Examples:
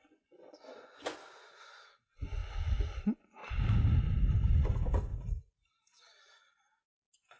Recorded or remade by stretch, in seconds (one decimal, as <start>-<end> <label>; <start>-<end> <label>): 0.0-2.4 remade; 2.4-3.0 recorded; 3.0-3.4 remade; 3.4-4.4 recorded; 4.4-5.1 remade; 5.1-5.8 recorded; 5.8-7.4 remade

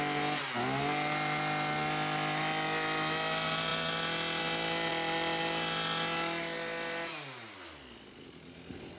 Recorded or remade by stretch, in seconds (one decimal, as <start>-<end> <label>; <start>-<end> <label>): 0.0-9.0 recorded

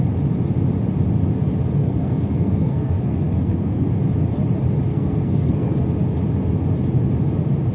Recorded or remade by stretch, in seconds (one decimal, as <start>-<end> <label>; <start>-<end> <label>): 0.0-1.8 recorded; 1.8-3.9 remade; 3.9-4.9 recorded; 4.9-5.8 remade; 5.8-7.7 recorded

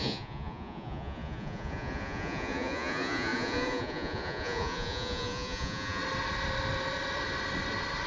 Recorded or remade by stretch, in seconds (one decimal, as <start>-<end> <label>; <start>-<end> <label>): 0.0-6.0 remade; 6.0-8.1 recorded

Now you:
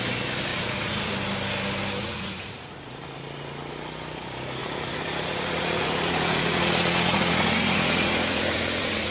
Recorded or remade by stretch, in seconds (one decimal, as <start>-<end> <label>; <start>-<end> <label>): 0.0-0.5 recorded; 0.5-1.1 remade; 1.1-2.0 recorded; 2.0-3.0 remade; 3.0-4.6 recorded; 4.6-9.1 remade

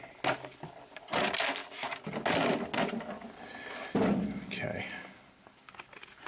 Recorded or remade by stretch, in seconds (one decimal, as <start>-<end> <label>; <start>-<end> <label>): 0.0-6.3 recorded